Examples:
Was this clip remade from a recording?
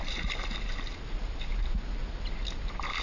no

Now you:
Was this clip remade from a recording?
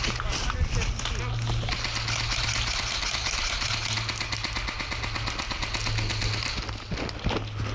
no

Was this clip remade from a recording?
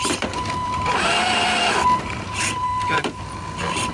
yes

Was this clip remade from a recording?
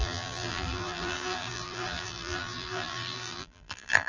yes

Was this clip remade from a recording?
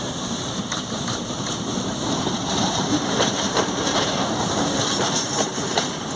yes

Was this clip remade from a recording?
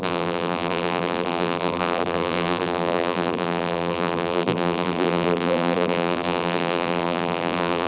yes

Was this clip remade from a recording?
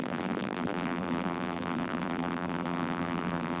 yes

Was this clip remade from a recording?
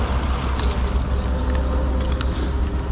no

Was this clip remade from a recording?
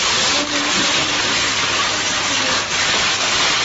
no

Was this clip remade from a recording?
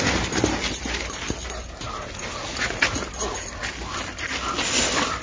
no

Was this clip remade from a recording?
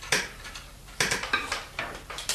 yes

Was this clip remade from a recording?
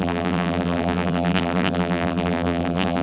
yes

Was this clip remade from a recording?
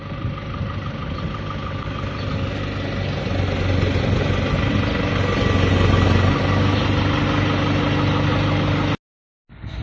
no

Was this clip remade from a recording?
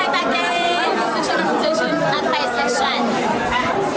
yes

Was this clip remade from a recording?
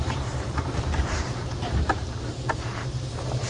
yes